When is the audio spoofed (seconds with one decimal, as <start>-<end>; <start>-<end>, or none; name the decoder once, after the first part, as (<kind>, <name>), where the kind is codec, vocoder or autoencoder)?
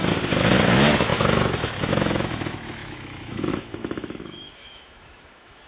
0.7-5.7 (autoencoder, DAC-VAE)